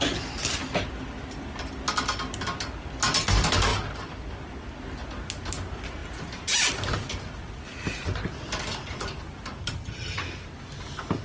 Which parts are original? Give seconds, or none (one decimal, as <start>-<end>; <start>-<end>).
0.0-9.6; 10.2-11.2

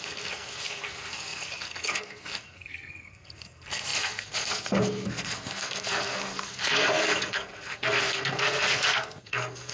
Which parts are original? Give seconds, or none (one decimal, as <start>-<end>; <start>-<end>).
none

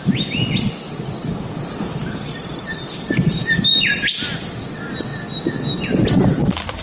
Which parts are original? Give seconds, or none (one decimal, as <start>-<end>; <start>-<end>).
5.1-6.1

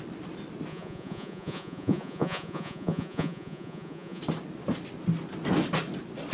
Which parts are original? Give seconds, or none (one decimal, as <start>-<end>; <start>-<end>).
0.0-0.7; 4.2-6.3

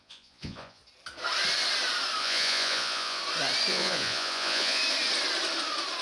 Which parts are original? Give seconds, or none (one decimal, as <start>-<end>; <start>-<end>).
0.8-2.2; 3.2-3.7; 4.8-6.0

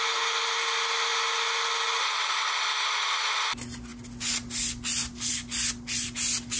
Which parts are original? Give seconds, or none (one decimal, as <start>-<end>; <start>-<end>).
0.0-6.6

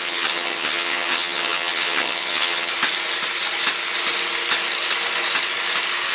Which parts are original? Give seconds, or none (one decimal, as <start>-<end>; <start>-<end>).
2.7-6.1

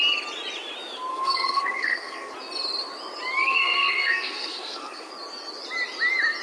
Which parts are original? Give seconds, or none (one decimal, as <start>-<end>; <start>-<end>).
0.0-1.1; 2.3-3.4; 5.1-6.4